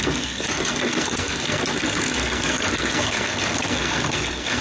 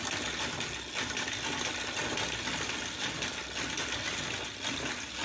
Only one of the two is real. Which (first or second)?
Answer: second